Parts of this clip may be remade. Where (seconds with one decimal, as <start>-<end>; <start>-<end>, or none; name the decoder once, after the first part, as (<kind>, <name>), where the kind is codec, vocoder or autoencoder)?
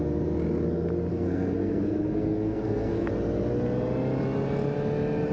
1.1-3.1 (codec, SNAC)